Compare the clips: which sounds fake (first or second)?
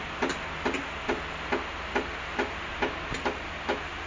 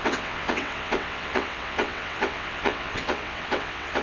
second